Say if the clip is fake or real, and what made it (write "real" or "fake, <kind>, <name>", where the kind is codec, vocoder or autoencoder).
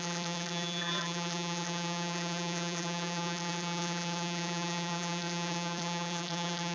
fake, vocoder, BigVGAN v2